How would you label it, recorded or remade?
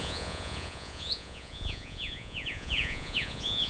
remade